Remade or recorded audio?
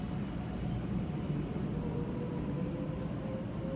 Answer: recorded